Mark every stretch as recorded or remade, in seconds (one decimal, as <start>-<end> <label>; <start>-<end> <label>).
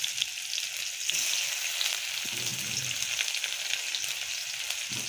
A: 0.0-5.1 recorded